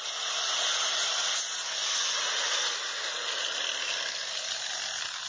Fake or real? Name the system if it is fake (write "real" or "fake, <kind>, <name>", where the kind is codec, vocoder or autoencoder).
real